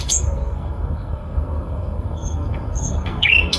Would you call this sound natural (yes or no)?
no